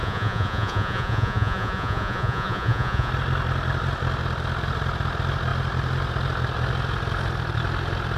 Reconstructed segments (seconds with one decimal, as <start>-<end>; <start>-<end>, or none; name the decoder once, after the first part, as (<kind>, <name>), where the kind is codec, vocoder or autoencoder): 0.0-3.1 (vocoder, Vocos)